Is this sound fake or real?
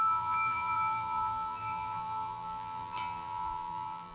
fake